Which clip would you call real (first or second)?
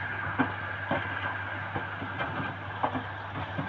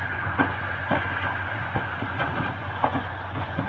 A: first